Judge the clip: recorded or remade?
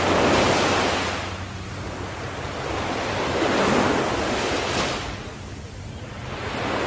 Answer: recorded